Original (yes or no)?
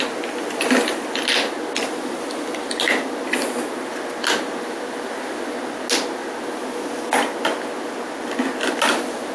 yes